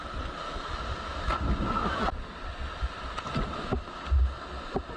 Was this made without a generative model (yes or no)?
yes